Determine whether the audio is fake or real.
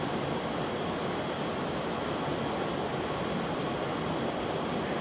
real